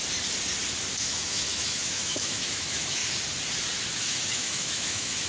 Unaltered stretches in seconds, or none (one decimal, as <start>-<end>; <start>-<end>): 0.0-0.9; 3.0-4.0

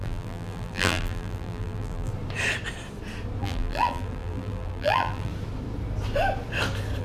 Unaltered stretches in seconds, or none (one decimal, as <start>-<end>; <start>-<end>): 2.1-3.4; 5.3-7.0

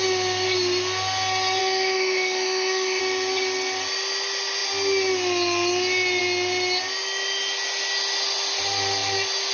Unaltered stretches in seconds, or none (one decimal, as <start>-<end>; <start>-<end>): 0.0-1.6; 3.0-9.5

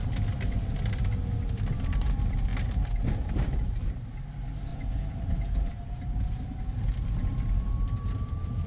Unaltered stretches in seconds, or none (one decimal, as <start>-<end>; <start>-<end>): 0.0-2.5; 4.1-4.7; 6.6-7.3

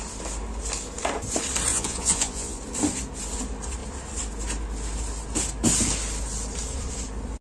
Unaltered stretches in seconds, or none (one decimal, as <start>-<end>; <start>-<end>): 0.0-1.7; 2.6-7.4

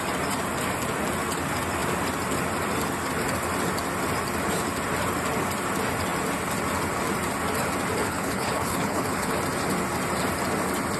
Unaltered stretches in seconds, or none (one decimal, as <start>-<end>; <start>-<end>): 0.0-8.0; 9.3-11.0

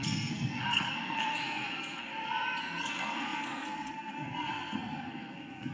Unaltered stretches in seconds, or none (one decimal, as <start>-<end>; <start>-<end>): 2.1-2.6

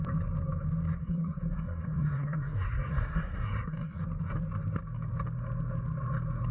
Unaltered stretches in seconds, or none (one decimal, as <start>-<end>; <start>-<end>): 0.0-1.0; 4.0-6.5